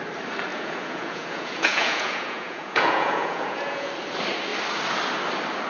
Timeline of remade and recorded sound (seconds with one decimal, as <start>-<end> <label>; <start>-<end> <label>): 0.0-0.5 recorded; 0.5-3.9 remade; 3.9-5.7 recorded